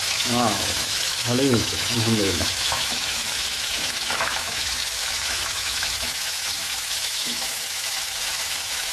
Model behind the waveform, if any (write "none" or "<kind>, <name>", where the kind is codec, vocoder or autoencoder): autoencoder, DAC-VAE